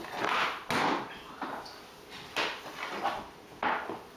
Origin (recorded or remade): recorded